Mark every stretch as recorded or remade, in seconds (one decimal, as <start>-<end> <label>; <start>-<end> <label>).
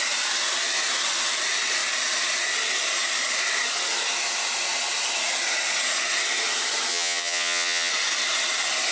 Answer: 0.0-6.9 recorded; 6.9-7.9 remade; 7.9-8.9 recorded